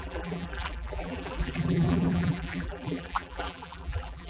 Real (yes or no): no